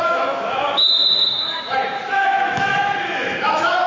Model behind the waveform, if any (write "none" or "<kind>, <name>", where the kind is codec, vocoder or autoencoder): autoencoder, DAC-VAE